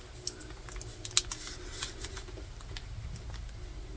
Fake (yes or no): no